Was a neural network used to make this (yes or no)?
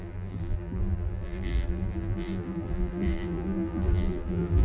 yes